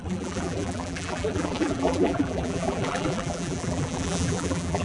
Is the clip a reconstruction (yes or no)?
yes